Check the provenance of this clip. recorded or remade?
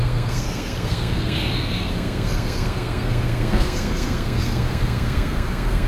remade